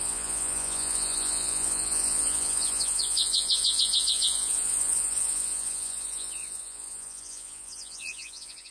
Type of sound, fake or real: fake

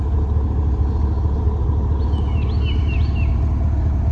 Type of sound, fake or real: real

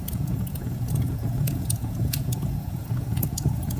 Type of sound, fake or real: fake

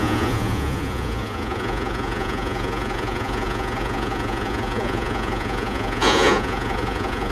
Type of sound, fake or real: fake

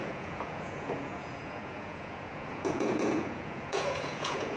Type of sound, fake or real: fake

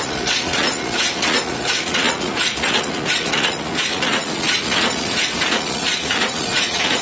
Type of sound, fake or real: fake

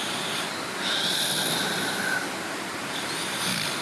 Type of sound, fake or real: real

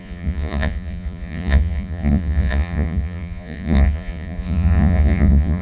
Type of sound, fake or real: fake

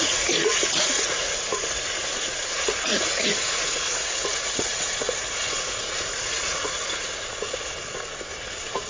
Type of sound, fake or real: fake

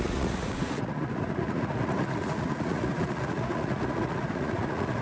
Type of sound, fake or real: fake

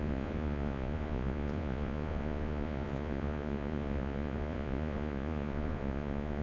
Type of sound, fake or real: fake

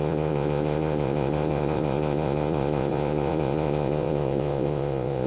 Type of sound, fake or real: fake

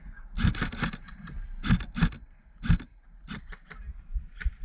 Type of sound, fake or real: real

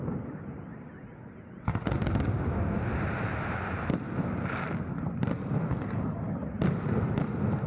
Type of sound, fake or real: real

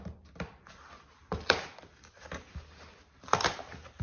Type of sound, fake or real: real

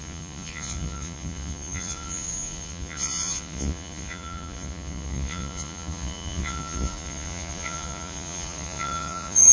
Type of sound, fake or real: fake